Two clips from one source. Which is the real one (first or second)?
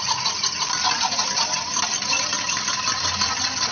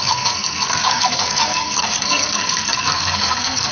first